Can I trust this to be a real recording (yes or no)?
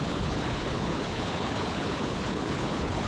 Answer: no